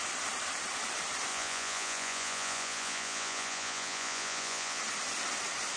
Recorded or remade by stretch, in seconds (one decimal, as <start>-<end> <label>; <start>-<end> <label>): 0.0-1.3 recorded; 1.3-4.8 remade; 4.8-5.8 recorded